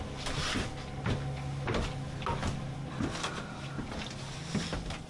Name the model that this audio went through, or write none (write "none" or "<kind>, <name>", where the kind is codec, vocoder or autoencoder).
none